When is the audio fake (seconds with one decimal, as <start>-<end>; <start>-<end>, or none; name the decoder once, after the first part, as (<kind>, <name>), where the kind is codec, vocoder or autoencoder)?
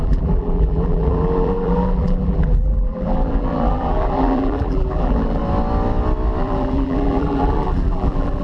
0.0-5.4 (vocoder, BigVGAN v2); 6.4-8.4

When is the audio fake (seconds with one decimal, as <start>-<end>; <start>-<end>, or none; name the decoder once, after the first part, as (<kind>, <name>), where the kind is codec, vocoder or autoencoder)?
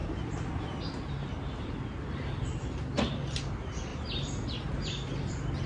3.9-5.3 (vocoder, BigVGAN v2)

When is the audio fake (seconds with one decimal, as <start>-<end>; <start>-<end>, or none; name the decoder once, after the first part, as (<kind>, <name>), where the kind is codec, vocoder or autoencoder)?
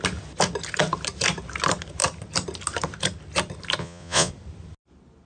3.8-4.3 (vocoder, Vocos)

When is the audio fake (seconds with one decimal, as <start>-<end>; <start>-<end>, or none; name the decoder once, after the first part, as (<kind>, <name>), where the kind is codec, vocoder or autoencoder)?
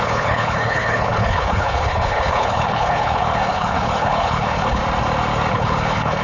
0.0-4.8 (codec, HILCodec); 5.5-6.2